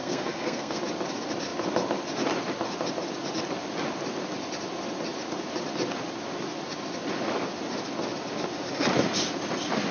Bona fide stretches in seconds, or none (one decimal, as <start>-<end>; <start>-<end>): 0.8-9.9